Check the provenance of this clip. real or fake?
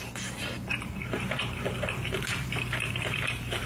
fake